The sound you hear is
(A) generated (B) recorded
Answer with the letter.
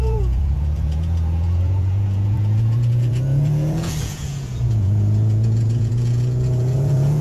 A